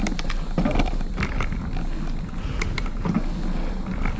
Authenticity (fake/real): real